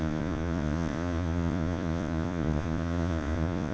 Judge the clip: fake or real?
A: fake